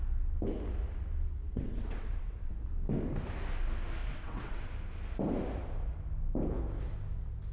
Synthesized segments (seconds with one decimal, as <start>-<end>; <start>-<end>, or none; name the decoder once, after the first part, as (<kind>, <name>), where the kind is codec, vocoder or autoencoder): 1.4-2.5 (vocoder, WaveNeXt); 4.0-4.7